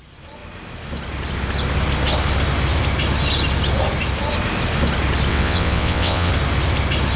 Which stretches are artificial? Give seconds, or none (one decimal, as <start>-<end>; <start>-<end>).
5.3-6.3